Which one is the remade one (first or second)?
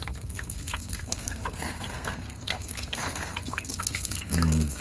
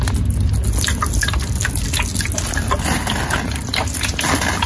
first